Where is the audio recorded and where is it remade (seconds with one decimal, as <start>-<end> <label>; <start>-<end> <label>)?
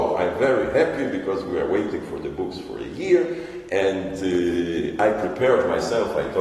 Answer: 0.0-6.4 recorded